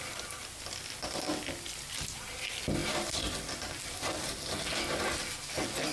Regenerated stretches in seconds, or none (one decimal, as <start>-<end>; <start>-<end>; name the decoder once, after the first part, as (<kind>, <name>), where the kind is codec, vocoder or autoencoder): none